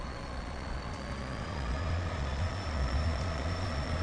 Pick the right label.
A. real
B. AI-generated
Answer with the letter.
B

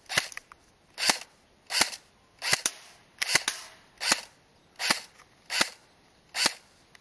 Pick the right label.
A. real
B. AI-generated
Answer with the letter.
A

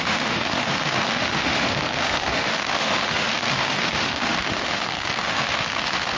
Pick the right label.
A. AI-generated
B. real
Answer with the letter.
A